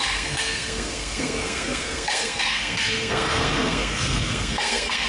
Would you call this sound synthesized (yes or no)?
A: yes